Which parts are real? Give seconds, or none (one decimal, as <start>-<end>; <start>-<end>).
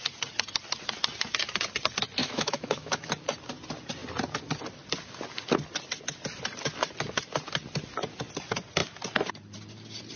0.0-2.2; 3.1-10.2